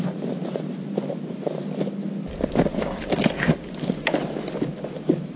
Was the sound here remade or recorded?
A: recorded